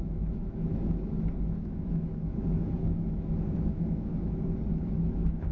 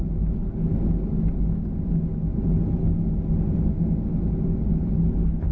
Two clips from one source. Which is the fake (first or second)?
first